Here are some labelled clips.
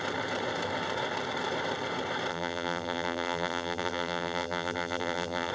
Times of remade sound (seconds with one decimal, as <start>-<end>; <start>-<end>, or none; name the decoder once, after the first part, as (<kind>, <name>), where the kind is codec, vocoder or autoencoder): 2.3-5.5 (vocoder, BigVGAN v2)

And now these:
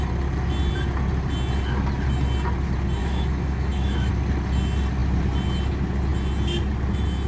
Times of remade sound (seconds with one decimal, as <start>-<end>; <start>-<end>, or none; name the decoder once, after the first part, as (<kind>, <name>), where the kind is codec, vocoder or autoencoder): 3.0-4.1 (autoencoder, DAC-VAE)

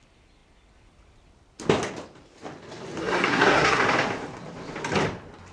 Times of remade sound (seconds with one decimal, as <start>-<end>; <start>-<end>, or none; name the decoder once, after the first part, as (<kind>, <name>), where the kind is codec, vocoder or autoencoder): 3.0-3.8 (codec, SNAC)